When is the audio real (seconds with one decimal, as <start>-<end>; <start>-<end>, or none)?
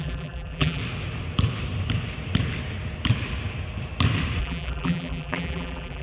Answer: 0.8-4.4